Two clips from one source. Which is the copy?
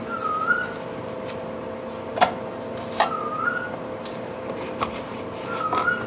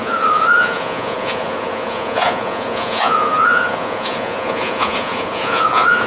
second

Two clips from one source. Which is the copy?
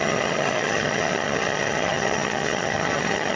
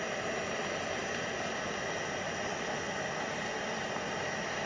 first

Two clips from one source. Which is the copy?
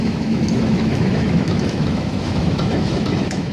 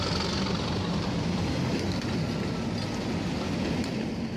first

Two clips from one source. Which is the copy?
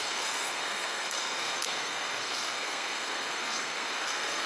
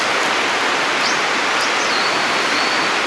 first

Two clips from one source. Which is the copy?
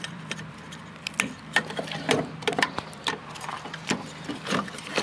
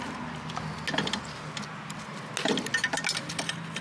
first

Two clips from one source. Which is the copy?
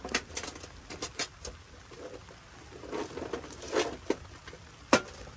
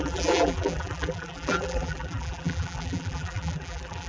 second